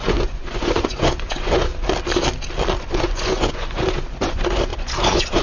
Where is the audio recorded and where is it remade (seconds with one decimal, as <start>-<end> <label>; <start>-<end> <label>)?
0.0-1.7 remade; 1.7-2.8 recorded; 2.8-5.4 remade